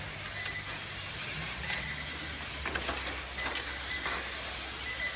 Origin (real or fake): real